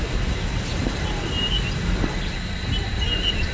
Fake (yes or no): no